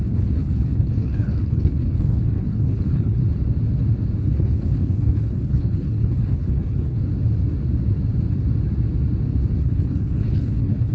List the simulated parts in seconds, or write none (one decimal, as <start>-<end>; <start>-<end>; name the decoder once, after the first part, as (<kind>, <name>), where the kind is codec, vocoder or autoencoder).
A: 0.0-3.2 (codec, HILCodec); 4.2-7.0; 9.6-10.9